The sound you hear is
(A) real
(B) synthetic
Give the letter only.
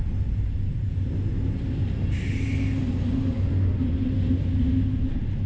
A